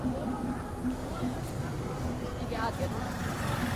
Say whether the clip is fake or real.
fake